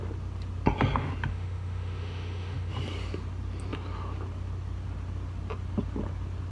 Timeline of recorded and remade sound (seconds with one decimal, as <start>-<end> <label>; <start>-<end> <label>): 0.0-1.3 recorded; 1.3-2.7 remade; 2.7-6.5 recorded